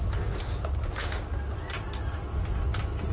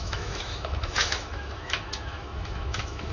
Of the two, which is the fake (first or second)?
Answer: second